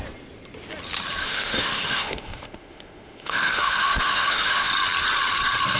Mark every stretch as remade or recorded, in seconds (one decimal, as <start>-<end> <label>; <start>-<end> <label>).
0.0-1.2 recorded; 1.2-4.7 remade; 4.7-5.8 recorded